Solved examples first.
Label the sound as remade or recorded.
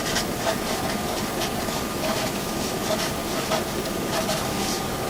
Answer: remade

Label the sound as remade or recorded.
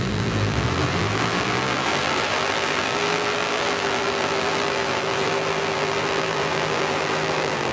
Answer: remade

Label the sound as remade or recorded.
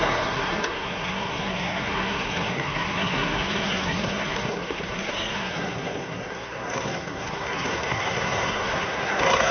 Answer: remade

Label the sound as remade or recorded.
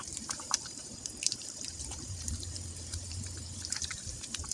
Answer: remade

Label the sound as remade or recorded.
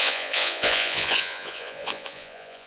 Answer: remade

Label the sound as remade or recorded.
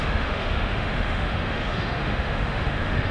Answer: remade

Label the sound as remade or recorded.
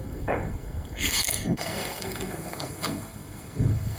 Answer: remade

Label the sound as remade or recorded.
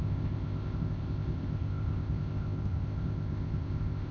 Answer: remade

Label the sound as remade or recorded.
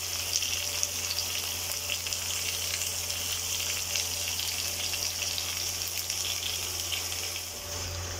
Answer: recorded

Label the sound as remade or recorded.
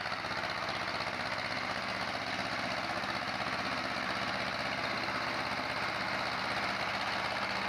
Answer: recorded